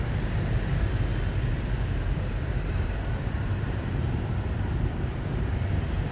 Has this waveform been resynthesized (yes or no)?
yes